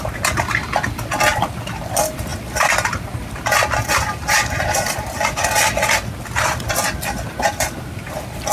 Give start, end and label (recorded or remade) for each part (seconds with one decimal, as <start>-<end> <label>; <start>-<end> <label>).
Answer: 0.0-8.5 recorded